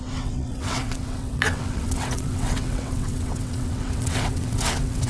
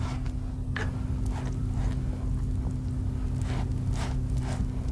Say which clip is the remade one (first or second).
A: first